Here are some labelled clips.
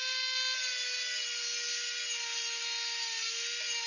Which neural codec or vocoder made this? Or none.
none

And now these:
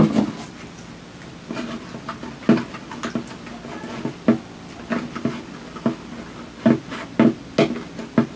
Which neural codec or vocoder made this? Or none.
none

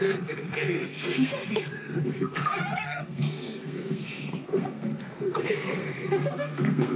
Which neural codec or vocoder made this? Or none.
codec, SNAC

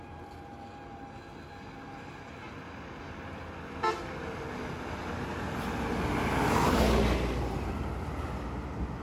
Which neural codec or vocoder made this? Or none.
none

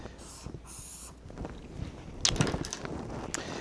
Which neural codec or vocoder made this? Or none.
none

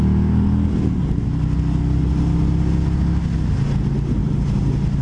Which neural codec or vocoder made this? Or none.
none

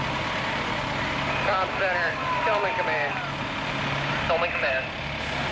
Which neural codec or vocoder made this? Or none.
none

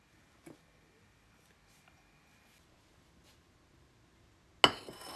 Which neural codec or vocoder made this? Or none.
none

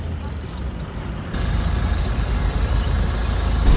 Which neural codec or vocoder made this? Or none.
none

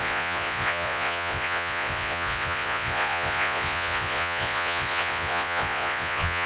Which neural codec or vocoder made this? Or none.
vocoder, Vocos